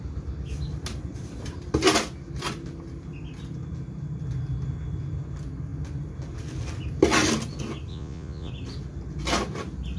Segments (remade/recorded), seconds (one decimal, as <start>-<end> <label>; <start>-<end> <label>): 0.0-7.9 recorded; 7.9-8.5 remade; 8.5-10.0 recorded